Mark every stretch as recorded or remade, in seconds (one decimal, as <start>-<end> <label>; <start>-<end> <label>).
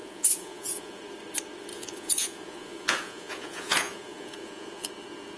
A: 0.0-1.0 remade; 1.0-1.7 recorded; 1.7-4.9 remade; 4.9-5.4 recorded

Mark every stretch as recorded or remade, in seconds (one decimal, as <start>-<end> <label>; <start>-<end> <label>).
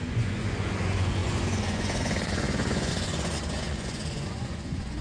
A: 0.0-5.0 remade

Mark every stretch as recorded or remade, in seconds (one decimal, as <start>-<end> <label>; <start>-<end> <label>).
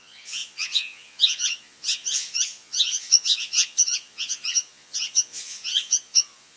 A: 0.0-6.6 remade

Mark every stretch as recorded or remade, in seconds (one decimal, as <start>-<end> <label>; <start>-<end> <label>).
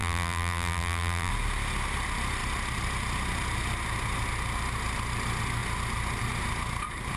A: 0.0-1.3 remade; 1.3-7.2 recorded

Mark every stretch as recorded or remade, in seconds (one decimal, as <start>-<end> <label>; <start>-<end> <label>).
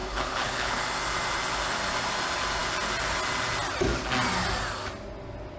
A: 0.0-0.8 remade; 0.8-5.6 recorded